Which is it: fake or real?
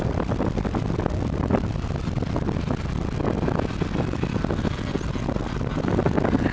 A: real